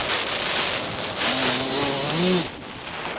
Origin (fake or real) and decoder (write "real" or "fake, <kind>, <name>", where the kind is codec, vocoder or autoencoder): real